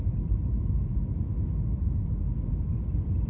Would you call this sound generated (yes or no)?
no